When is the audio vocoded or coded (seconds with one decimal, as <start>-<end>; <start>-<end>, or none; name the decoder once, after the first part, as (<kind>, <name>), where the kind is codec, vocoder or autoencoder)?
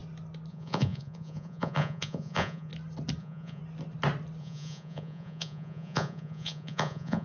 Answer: 0.5-2.7 (vocoder, Vocos); 3.2-3.6; 4.4-7.2